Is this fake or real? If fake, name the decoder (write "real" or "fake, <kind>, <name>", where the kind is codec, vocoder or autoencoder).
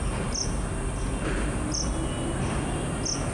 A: real